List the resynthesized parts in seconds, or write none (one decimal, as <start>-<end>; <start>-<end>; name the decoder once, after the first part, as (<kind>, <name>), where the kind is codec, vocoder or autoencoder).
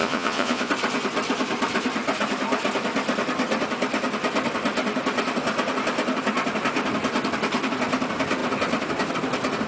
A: 0.0-0.7 (vocoder, Vocos)